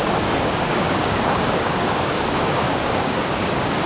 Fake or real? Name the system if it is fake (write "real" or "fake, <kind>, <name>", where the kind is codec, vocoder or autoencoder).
fake, codec, DAC